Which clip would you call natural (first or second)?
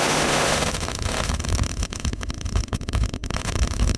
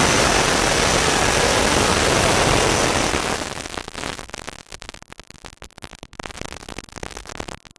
second